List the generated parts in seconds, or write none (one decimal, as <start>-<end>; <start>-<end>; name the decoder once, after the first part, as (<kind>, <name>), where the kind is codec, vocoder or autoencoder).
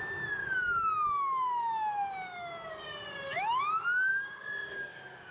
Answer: 0.4-3.6 (codec, DAC); 4.1-5.3